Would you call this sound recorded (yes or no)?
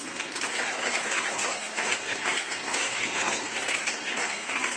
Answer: no